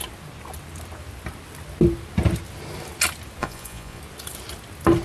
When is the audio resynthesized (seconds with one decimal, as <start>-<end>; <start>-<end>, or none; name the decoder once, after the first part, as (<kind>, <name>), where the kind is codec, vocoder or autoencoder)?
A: 3.4-4.0 (vocoder, Vocos)